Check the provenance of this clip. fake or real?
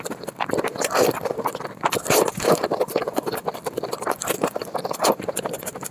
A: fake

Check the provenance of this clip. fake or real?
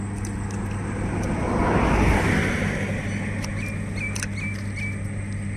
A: real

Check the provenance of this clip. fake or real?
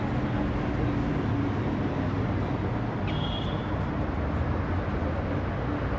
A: real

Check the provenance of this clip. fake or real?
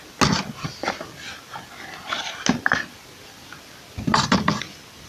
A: real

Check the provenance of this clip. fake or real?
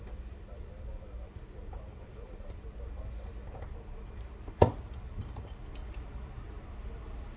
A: fake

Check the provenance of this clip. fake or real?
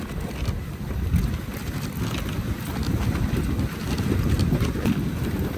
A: real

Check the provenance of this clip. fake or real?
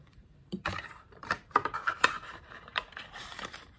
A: fake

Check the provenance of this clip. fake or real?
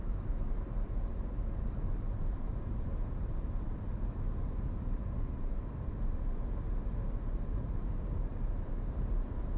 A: fake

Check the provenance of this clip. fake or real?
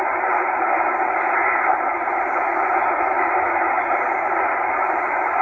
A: fake